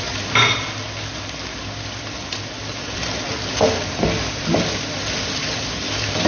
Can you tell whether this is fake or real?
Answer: real